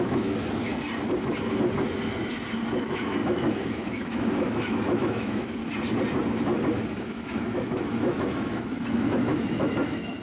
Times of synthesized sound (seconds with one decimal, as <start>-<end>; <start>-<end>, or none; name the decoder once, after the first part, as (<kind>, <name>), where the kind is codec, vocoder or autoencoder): 0.0-0.7 (autoencoder, DAC-VAE); 2.7-5.6; 7.0-10.2